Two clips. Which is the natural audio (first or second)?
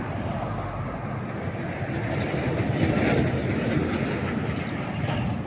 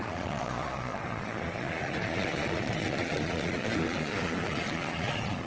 first